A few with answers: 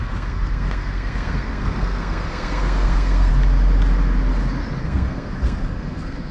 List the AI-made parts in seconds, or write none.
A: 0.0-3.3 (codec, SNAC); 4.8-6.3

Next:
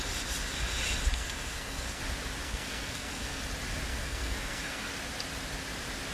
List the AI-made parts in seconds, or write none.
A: 1.1-2.0 (codec, SNAC); 2.4-3.4; 3.9-4.9